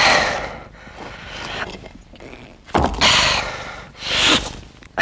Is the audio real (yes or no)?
yes